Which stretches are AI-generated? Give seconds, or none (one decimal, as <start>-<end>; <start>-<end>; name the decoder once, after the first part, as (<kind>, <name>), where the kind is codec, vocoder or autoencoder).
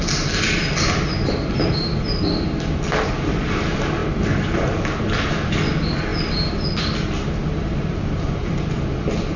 none